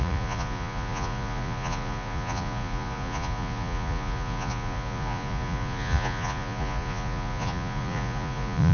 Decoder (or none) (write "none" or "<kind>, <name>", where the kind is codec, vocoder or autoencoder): vocoder, Vocos